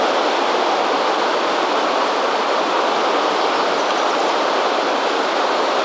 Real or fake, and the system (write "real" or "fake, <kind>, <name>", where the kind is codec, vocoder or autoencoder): real